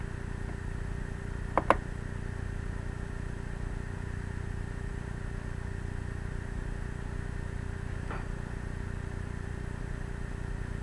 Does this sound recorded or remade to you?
recorded